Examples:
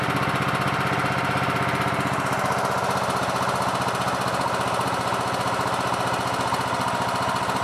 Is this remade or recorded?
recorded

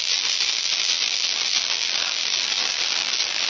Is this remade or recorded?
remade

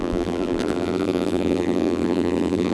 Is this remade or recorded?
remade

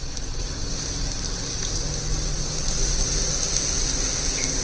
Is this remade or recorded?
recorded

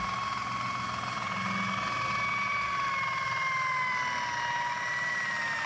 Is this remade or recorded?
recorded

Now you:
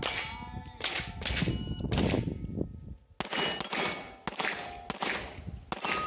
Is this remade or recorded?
recorded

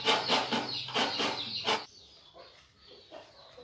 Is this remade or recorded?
recorded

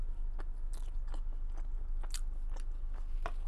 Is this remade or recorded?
recorded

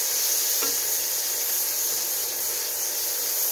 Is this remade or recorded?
recorded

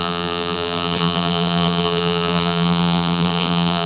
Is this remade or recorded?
remade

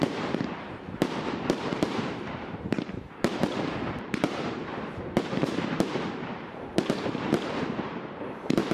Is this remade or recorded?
remade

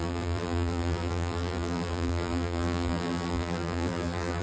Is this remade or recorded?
remade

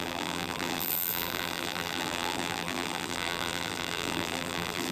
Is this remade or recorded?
remade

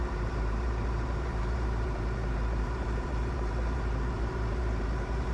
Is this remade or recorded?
remade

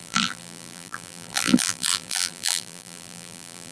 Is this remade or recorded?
remade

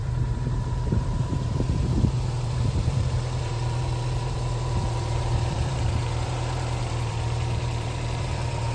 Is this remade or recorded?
remade